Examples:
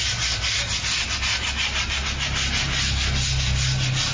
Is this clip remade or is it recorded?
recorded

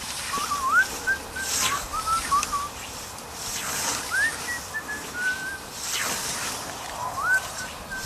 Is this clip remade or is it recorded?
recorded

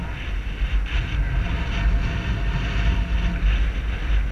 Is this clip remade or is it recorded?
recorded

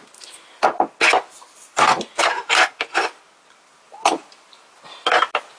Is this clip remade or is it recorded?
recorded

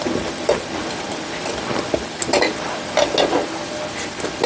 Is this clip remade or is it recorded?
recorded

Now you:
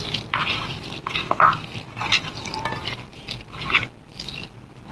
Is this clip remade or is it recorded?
recorded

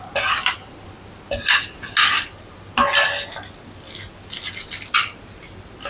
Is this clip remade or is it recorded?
recorded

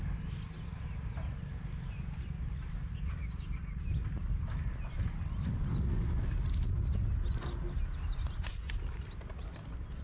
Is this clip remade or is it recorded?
recorded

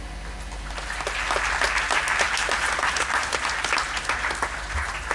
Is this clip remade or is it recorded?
recorded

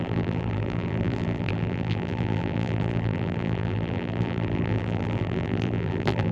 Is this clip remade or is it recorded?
remade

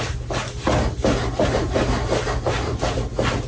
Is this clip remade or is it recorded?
recorded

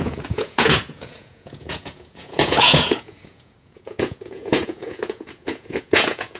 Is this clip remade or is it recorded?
remade